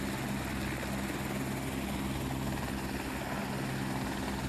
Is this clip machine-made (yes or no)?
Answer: no